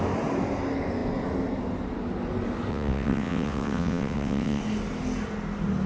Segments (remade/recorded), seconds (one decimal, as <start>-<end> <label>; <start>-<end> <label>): 0.0-2.7 recorded; 2.7-4.6 remade; 4.6-5.9 recorded